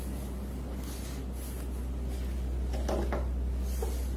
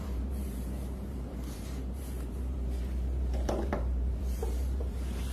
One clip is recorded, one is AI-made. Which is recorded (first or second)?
first